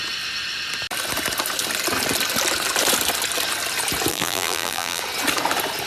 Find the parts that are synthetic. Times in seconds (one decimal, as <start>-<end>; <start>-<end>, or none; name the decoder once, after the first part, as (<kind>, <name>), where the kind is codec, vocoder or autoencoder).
4.1-5.0 (vocoder, BigVGAN v2)